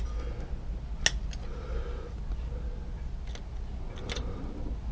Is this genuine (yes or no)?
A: yes